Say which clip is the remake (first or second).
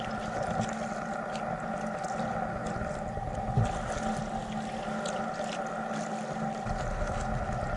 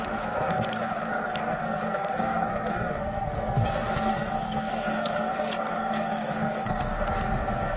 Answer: second